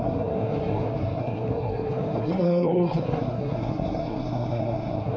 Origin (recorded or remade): remade